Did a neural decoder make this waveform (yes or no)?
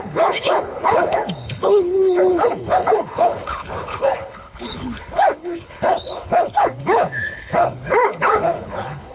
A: yes